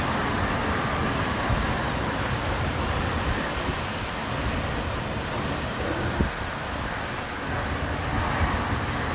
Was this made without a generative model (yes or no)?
yes